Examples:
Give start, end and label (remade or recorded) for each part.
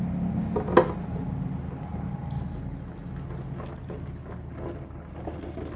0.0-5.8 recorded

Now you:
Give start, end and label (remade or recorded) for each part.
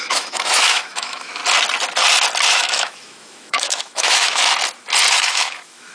0.0-1.4 remade; 1.4-2.5 recorded; 2.5-4.4 remade; 4.4-5.1 recorded; 5.1-5.9 remade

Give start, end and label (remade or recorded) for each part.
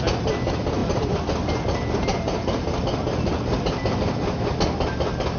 0.0-5.4 recorded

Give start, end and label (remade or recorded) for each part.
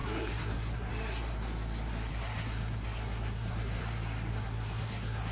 0.0-0.9 remade; 0.9-2.1 recorded; 2.1-3.8 remade; 3.8-4.3 recorded; 4.3-5.3 remade